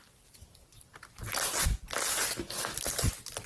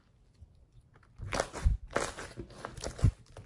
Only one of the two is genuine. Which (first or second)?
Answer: second